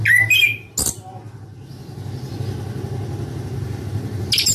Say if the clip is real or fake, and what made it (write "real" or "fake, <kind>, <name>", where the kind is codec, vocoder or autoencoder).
real